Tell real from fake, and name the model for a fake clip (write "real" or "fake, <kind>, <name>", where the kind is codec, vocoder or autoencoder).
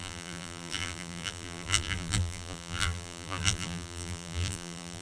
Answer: fake, vocoder, BigVGAN v2